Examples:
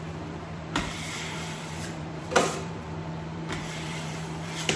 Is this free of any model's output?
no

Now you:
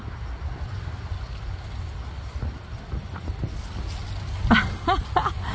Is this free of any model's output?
yes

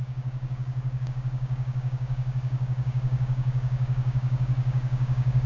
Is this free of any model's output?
no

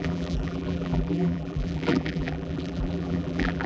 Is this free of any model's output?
no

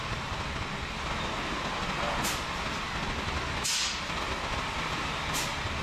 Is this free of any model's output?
yes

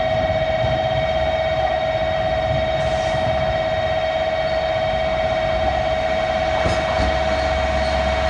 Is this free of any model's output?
yes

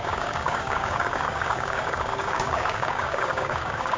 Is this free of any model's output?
no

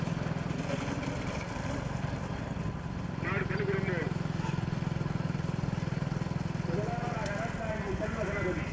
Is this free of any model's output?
yes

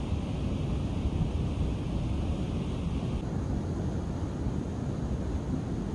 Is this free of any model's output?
yes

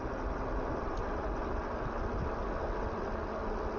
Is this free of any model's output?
yes